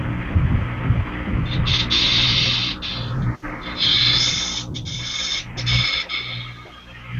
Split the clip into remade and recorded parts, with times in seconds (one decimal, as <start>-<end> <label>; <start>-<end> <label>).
0.0-7.2 recorded